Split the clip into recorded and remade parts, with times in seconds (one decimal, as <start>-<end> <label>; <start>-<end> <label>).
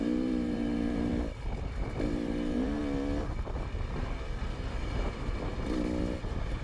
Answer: 0.0-1.1 remade; 1.1-2.1 recorded; 2.1-2.8 remade; 2.8-4.8 recorded; 4.8-5.5 remade; 5.5-6.0 recorded; 6.0-6.6 remade